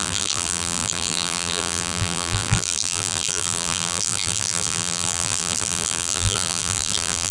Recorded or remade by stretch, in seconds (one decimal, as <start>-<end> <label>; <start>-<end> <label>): 0.0-7.3 remade